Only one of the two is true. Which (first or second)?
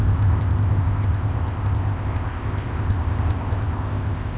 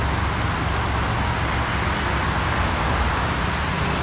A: second